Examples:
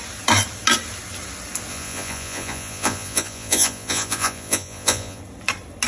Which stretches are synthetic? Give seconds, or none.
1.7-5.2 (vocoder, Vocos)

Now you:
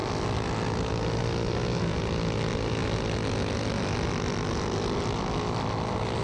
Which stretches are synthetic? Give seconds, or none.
none

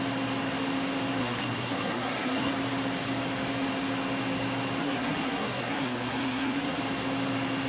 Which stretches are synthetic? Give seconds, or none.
1.2-2.5 (codec, SNAC); 4.8-6.8

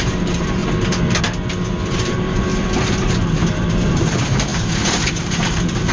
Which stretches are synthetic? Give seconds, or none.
0.0-0.6 (vocoder, BigVGAN v2); 1.7-2.5; 3.4-5.9

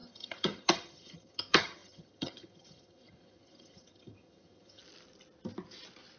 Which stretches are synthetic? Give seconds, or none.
0.0-4.8 (vocoder, HiFi-GAN)

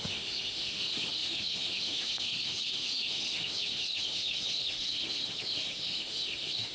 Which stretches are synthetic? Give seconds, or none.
0.0-6.7 (autoencoder, DAC-VAE)